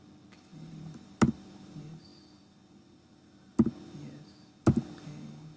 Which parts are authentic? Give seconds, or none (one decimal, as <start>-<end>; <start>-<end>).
0.0-5.6